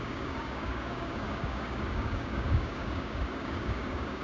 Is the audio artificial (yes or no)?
yes